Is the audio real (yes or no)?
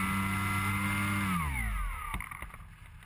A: yes